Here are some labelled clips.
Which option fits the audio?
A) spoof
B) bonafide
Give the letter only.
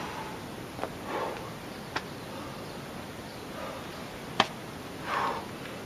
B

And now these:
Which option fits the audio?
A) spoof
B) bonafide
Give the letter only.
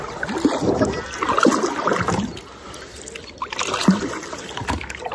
B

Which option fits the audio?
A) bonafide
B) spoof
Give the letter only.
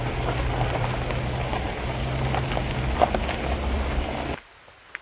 A